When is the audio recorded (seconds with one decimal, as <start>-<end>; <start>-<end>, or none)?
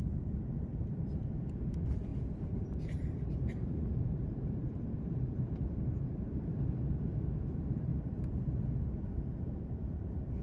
2.1-2.6